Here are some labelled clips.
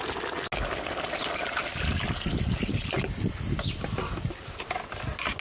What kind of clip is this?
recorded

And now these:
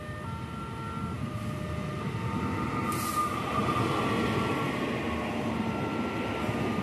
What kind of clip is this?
recorded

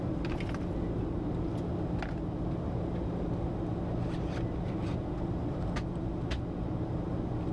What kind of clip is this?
recorded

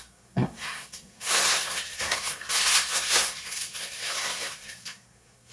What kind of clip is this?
remade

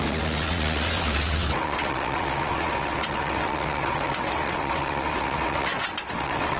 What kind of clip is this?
remade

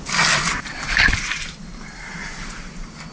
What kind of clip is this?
remade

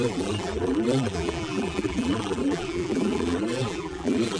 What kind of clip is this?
remade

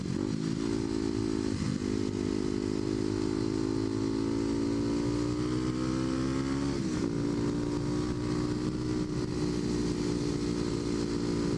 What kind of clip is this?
recorded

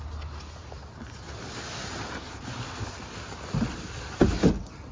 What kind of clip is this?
recorded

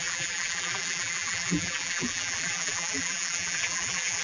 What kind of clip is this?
remade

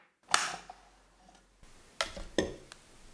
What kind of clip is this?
recorded